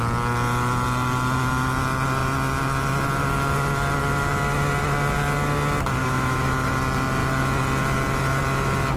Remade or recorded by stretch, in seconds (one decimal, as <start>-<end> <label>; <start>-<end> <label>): 0.0-6.0 recorded; 6.0-6.7 remade; 6.7-9.0 recorded